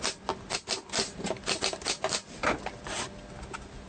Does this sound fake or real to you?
real